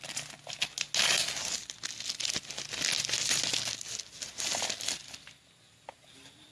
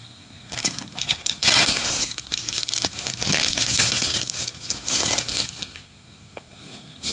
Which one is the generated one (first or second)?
second